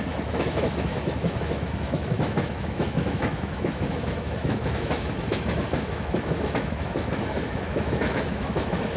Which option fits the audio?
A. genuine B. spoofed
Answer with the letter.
B